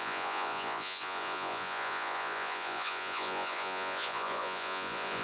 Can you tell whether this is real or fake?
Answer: fake